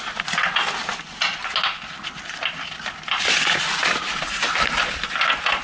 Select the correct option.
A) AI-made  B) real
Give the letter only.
B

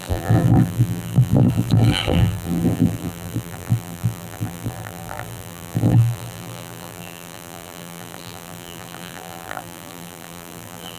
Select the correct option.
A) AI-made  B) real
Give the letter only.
A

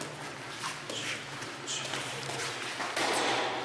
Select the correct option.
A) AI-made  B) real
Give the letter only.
B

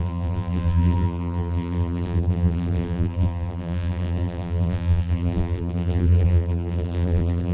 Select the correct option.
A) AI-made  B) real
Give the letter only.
A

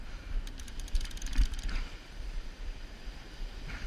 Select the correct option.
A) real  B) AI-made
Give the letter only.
B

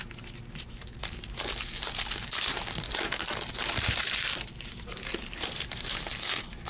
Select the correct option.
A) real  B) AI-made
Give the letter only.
B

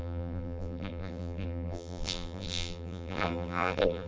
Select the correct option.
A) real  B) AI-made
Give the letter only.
B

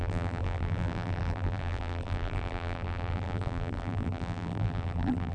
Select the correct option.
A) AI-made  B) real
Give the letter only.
A